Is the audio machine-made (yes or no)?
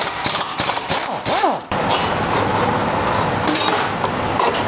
no